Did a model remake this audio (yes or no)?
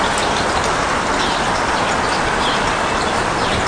yes